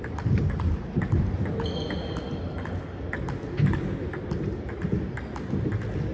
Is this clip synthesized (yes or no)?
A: no